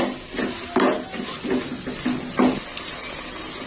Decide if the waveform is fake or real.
real